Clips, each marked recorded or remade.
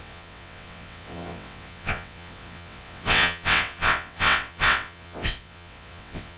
remade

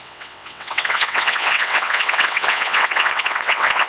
remade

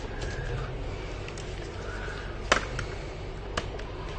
recorded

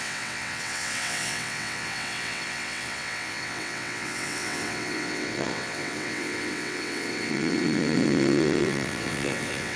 remade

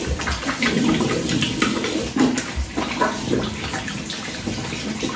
recorded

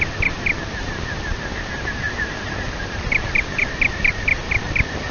recorded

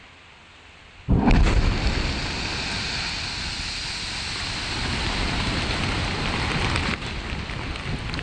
recorded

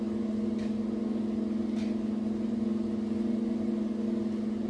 recorded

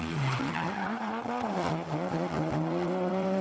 remade